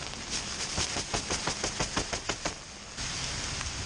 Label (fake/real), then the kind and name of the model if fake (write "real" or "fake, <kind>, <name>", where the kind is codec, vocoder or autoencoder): real